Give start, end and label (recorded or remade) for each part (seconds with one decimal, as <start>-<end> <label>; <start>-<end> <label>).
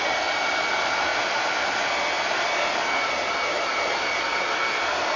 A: 0.0-5.2 recorded